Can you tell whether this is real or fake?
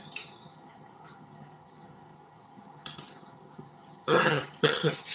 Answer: fake